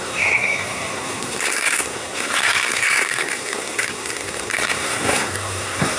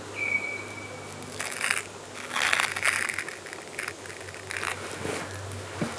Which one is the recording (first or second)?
second